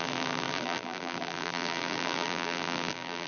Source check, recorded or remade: remade